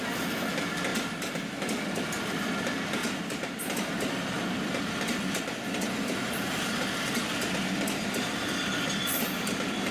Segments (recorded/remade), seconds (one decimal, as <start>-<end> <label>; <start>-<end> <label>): 0.0-9.9 recorded